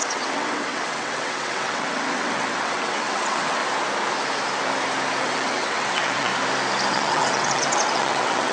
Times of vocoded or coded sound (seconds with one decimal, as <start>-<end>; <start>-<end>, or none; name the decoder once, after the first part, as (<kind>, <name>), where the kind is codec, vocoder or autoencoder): 0.0-3.6 (vocoder, WaveNeXt); 5.2-6.3; 6.9-8.5